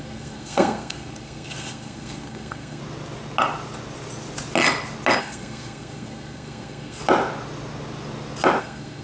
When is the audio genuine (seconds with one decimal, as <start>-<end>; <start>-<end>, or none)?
2.8-5.2; 7.0-8.6